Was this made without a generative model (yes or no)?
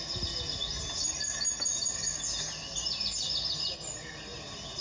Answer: yes